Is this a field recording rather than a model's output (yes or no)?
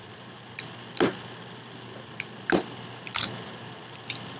yes